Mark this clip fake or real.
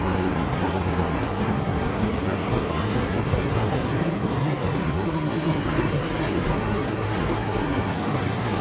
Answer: fake